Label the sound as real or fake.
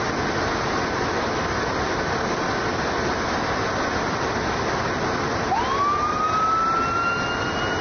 real